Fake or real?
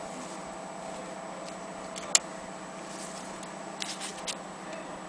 real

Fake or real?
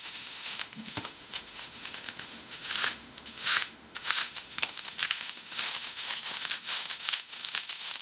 fake